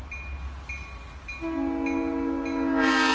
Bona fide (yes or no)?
yes